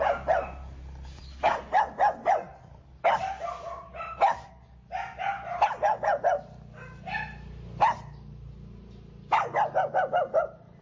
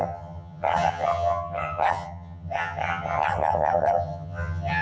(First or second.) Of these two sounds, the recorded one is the first